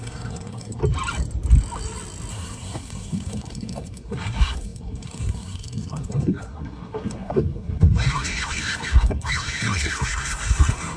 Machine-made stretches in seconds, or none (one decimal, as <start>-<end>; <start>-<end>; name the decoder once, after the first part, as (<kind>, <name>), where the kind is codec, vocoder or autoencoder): 0.0-0.8 (codec, SNAC); 2.3-11.0